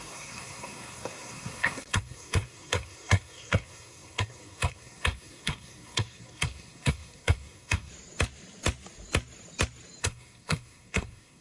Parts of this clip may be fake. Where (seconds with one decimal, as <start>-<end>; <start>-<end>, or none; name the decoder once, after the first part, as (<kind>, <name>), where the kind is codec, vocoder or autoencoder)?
0.0-7.9 (codec, SNAC); 10.0-11.4